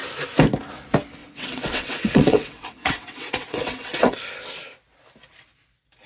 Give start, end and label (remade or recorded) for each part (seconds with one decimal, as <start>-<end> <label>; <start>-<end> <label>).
0.0-1.2 recorded; 1.2-4.2 remade; 4.2-6.1 recorded